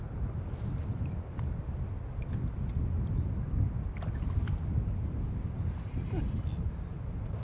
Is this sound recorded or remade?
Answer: recorded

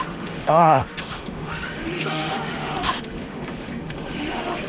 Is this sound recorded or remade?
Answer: remade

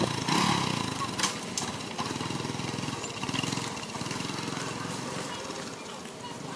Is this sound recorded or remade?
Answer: recorded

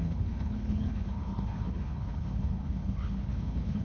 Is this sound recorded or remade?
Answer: remade